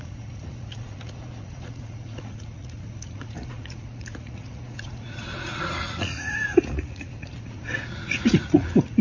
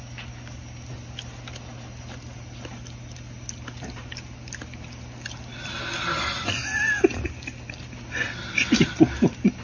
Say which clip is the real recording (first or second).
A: second